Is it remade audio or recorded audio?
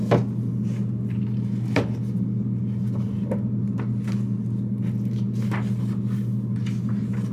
recorded